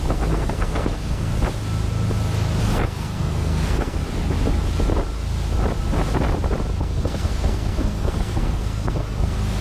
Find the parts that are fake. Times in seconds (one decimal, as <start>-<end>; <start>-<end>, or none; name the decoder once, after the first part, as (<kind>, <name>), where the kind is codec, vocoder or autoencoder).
0.0-1.3 (codec, SNAC); 2.6-4.0; 6.8-9.6